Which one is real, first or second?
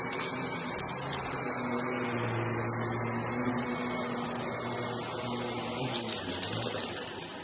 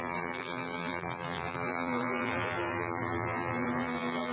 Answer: first